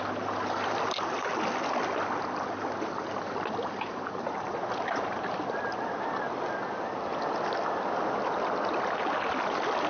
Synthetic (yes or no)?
no